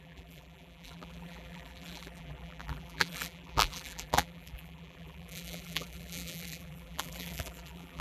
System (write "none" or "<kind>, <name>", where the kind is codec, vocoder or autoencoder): vocoder, BigVGAN v2